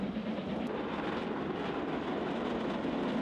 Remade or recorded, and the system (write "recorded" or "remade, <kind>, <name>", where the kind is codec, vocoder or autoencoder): recorded